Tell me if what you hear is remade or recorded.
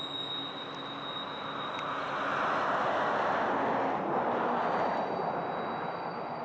recorded